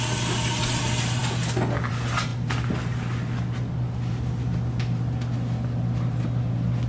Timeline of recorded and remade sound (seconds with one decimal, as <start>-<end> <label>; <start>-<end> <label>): 0.0-6.9 recorded